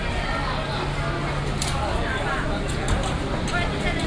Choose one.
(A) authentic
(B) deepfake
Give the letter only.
A